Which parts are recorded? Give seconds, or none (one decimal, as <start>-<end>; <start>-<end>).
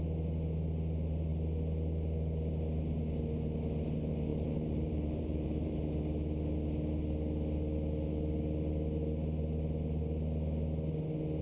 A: 0.0-4.3; 5.7-11.4